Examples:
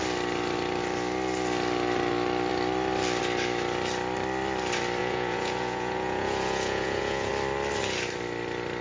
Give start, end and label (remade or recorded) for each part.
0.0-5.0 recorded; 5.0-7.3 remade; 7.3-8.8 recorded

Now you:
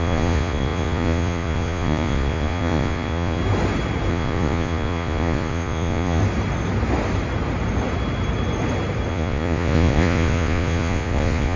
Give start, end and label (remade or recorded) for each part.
0.0-3.4 remade; 3.4-4.1 recorded; 4.1-6.2 remade; 6.2-9.1 recorded; 9.1-11.6 remade

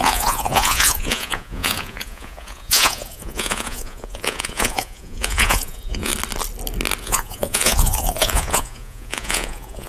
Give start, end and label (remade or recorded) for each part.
0.0-6.1 remade; 6.1-7.0 recorded; 7.0-9.9 remade

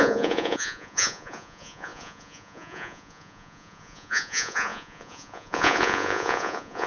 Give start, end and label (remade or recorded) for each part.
0.0-6.9 remade

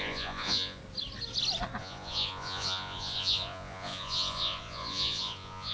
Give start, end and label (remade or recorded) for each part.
0.0-0.8 remade; 0.8-1.8 recorded; 1.8-5.7 remade

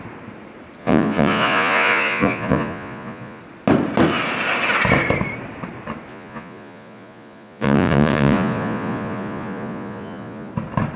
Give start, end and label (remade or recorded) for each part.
0.0-0.8 recorded; 0.8-3.4 remade; 3.4-6.1 recorded; 6.1-10.5 remade; 10.5-11.0 recorded

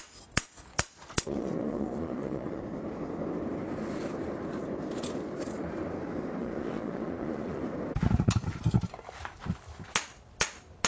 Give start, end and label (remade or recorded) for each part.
0.0-0.7 recorded; 0.7-2.6 remade; 2.6-6.4 recorded; 6.4-7.6 remade; 7.6-10.9 recorded

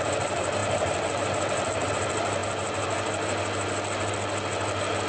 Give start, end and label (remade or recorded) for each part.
0.0-5.1 recorded